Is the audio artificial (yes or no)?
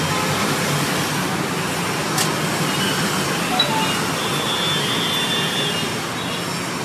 no